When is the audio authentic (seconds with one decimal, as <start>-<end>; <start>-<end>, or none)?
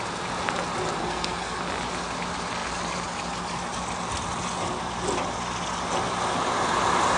0.0-1.0; 1.6-7.2